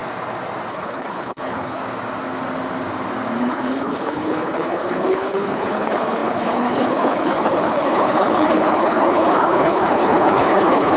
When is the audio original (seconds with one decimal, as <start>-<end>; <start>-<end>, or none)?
0.0-0.7; 1.8-3.4

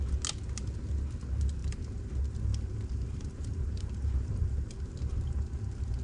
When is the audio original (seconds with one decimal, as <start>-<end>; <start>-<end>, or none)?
0.0-1.6; 2.1-2.5

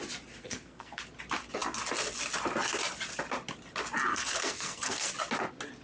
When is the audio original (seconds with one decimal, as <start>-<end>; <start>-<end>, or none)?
0.0-0.4; 1.0-4.1; 5.1-5.8

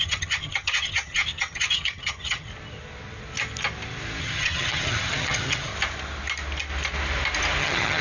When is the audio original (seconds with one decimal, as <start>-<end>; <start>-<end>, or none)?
2.5-4.2; 5.7-7.6

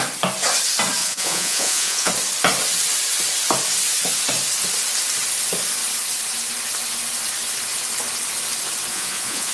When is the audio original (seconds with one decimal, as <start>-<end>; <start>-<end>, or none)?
0.0-1.0; 2.1-8.9

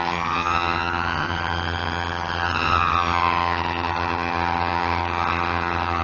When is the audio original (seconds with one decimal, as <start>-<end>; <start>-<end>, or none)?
none

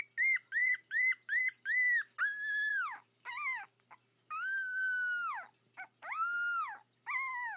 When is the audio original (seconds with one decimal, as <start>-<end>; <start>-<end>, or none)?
0.0-0.6; 1.4-2.7; 3.3-7.6